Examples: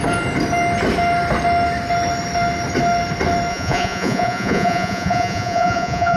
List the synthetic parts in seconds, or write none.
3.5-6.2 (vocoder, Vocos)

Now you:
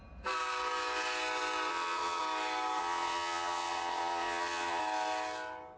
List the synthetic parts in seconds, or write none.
1.7-2.2 (vocoder, Vocos); 2.8-4.8